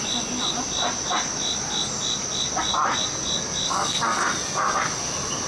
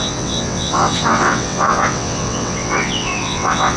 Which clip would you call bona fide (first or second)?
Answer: first